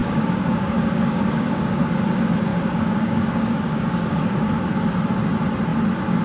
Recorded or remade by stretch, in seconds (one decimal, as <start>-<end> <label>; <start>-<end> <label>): 0.0-1.9 remade; 1.9-2.5 recorded; 2.5-4.6 remade; 4.6-6.2 recorded